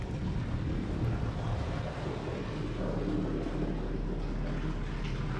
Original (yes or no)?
yes